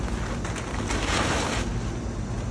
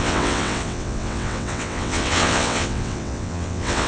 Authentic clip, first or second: first